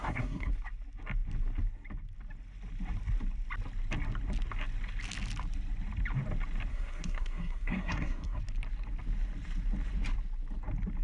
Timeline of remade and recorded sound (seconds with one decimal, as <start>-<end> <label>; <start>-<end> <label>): 0.0-0.5 remade; 0.5-6.7 recorded; 6.7-8.4 remade; 8.4-11.0 recorded